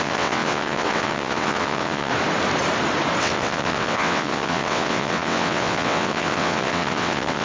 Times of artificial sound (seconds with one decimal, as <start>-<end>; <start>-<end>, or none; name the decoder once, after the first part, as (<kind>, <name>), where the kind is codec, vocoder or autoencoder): 0.0-2.1 (vocoder, WaveNeXt); 3.2-7.4